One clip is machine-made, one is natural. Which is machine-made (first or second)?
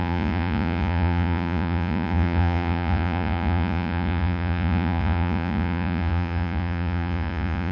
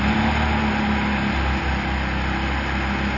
first